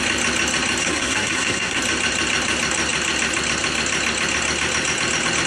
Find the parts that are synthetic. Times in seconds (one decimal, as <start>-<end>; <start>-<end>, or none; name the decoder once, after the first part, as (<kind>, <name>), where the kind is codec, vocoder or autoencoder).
0.8-1.8 (codec, SNAC)